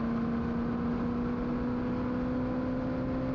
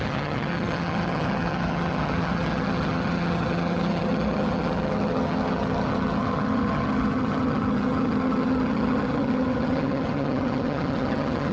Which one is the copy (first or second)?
second